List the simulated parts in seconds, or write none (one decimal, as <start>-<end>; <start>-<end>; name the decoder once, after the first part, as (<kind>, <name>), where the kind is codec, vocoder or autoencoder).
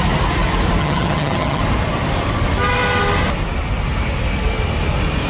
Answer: 0.8-1.6 (vocoder, HiFi-GAN)